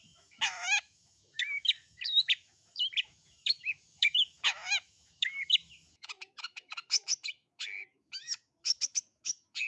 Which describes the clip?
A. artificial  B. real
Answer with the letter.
A